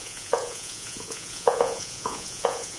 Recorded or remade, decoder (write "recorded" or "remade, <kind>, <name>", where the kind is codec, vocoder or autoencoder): remade, vocoder, Vocos